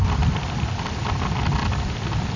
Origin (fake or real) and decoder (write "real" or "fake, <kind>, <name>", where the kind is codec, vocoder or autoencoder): real